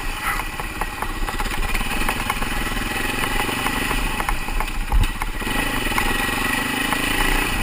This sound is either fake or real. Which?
fake